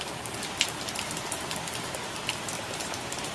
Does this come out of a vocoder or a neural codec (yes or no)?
no